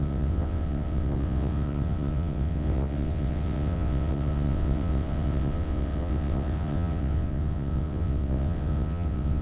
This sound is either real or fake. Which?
fake